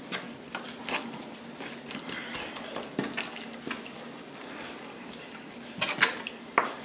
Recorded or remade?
recorded